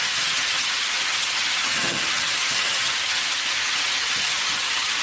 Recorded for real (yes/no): no